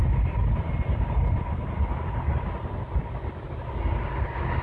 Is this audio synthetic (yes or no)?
no